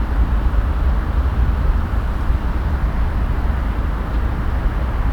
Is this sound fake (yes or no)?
no